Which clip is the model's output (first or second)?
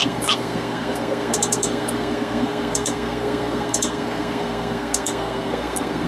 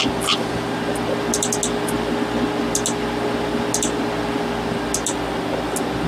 first